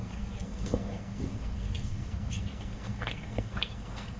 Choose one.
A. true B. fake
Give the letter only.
B